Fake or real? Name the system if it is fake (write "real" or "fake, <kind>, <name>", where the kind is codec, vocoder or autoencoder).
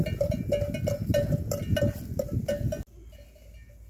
real